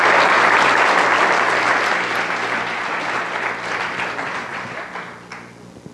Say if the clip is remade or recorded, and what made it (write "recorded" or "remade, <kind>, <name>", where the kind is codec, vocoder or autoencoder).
recorded